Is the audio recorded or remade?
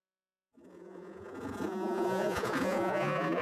remade